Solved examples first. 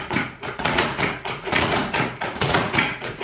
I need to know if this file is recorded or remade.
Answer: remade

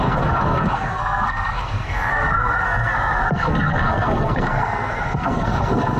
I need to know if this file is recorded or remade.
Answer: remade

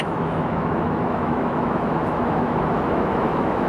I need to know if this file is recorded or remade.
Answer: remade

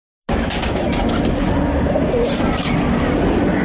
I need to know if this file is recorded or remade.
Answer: recorded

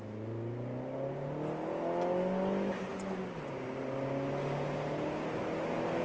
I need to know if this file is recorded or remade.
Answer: recorded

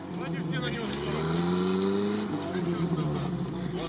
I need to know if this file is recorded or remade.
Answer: recorded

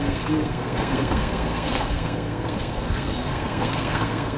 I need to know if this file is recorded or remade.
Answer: remade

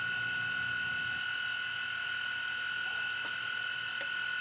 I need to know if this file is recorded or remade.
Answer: recorded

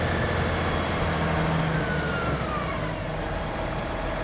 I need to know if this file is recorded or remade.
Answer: recorded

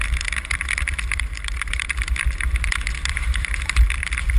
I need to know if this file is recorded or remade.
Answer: recorded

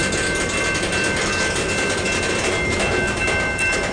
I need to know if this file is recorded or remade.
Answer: recorded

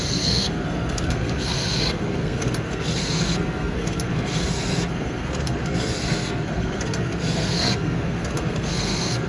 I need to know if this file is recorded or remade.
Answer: remade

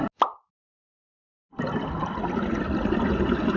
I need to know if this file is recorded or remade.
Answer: recorded